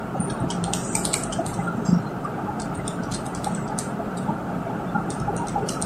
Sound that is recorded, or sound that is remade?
remade